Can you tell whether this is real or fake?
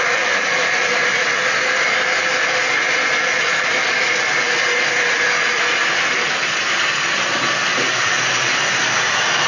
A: real